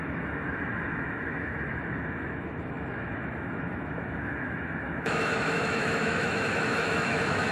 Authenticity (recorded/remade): remade